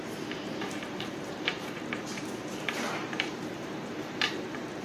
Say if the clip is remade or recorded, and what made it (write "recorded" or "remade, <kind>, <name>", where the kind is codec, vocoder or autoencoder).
remade, vocoder, BigVGAN v2